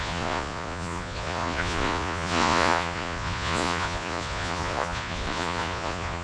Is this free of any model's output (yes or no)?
no